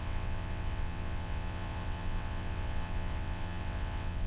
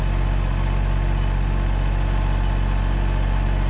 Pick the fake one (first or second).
first